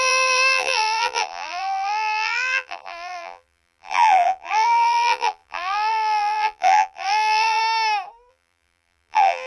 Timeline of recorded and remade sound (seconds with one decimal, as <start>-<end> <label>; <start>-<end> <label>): 0.0-7.6 remade; 7.6-8.3 recorded; 8.3-9.5 remade